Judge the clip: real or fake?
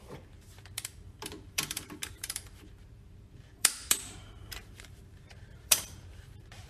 fake